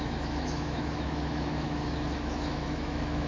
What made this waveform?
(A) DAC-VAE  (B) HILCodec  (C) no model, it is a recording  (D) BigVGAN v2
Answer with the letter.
A